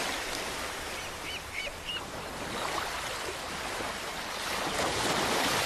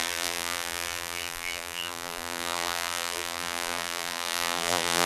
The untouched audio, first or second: first